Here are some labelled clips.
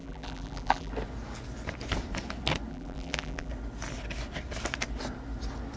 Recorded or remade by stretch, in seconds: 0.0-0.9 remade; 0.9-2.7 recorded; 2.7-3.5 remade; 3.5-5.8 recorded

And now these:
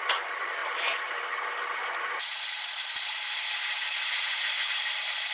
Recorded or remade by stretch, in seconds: 0.0-0.6 recorded; 0.6-1.2 remade; 1.2-1.8 recorded; 1.8-5.3 remade

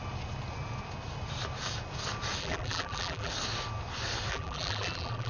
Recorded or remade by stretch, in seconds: 0.0-2.4 recorded; 2.4-3.3 remade; 3.3-4.3 recorded; 4.3-5.3 remade

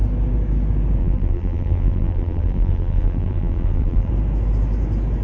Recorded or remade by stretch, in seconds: 0.0-1.0 recorded; 1.0-4.1 remade; 4.1-5.2 recorded

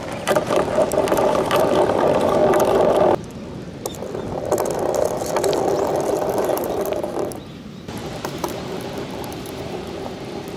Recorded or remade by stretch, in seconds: 0.0-2.4 remade; 2.4-6.4 recorded; 6.4-10.6 remade